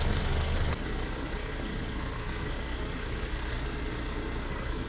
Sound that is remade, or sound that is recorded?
remade